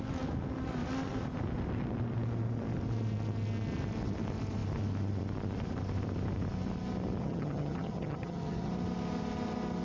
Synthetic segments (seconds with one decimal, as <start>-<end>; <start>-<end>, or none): 7.2-8.7